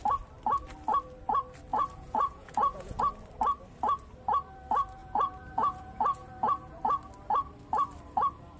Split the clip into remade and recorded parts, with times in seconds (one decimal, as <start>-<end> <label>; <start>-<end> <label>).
0.0-1.7 recorded; 1.7-3.0 remade; 3.0-5.0 recorded; 5.0-6.8 remade; 6.8-8.6 recorded

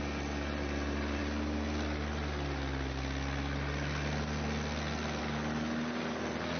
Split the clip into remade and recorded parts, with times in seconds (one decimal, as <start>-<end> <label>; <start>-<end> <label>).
0.0-6.6 recorded

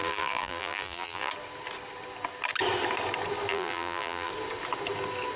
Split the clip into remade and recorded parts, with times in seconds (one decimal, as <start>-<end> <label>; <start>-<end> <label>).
0.0-1.3 remade; 1.3-3.5 recorded; 3.5-4.3 remade; 4.3-5.4 recorded

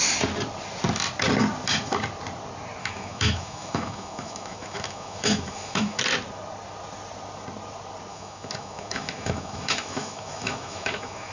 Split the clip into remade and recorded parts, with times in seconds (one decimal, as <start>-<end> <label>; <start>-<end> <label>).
0.0-2.8 recorded; 2.8-6.0 remade; 6.0-8.1 recorded; 8.1-11.3 remade